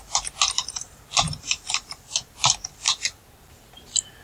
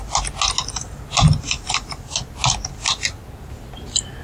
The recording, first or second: second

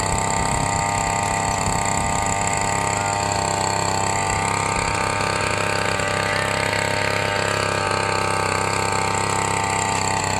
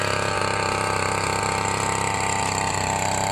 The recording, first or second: first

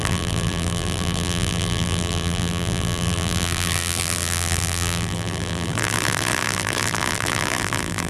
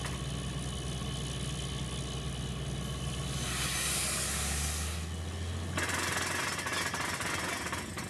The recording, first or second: second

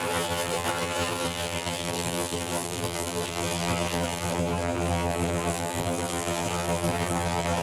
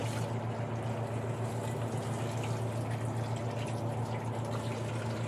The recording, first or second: second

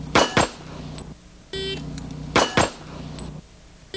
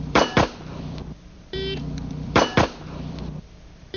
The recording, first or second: first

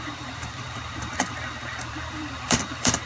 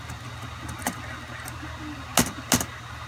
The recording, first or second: second